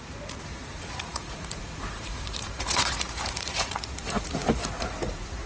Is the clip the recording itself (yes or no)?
no